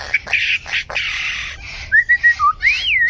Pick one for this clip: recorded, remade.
recorded